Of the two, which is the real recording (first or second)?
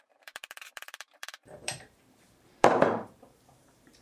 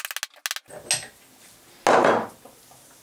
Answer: second